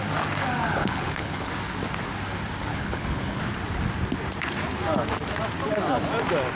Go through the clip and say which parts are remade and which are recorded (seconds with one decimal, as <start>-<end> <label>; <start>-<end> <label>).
0.0-0.7 recorded; 0.7-1.5 remade; 1.5-2.7 recorded; 2.7-3.4 remade; 3.4-6.6 recorded